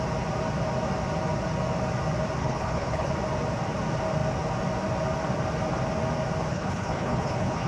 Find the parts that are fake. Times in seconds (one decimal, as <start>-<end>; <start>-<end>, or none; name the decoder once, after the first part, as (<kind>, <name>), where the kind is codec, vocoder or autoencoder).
2.4-3.1 (codec, HILCodec); 6.5-7.7